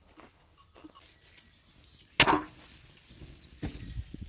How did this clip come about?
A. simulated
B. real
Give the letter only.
B